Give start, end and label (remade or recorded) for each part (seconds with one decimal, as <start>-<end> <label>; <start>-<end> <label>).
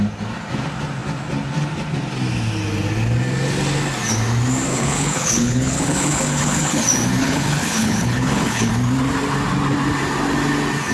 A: 0.0-4.7 recorded; 4.7-6.8 remade; 6.8-7.2 recorded; 7.2-8.7 remade; 8.7-10.9 recorded